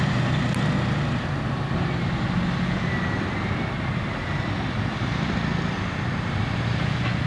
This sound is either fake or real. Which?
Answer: real